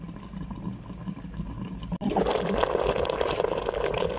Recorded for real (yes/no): yes